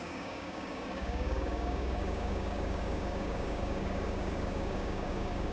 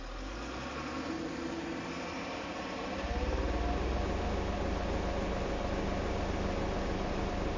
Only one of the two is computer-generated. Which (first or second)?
first